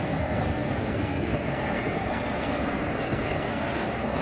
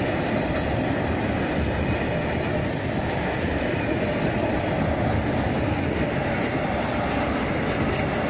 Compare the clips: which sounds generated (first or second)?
first